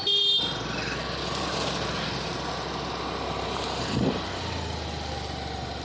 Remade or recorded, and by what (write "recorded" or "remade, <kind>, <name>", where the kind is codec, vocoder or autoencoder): recorded